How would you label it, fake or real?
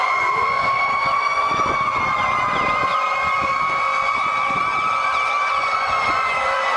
fake